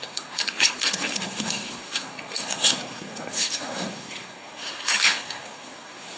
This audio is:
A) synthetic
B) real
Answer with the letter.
A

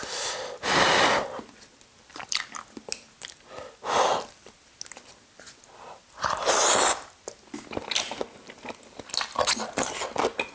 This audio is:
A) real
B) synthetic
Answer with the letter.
A